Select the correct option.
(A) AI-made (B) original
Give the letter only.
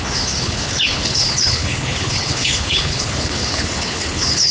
A